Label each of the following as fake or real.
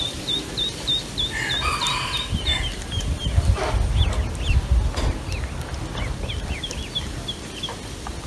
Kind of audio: real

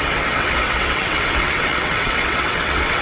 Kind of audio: fake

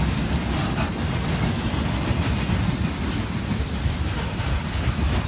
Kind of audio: real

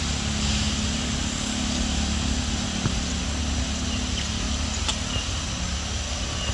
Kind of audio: real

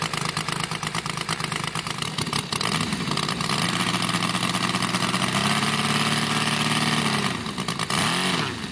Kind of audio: real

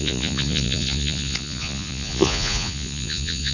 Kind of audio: fake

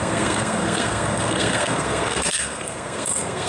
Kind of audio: fake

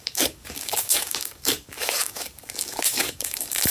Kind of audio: fake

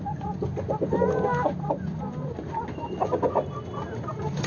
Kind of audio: real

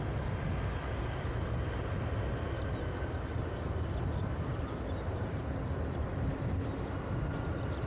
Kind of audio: real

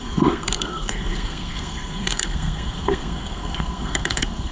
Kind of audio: fake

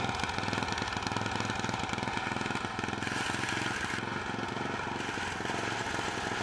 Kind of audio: real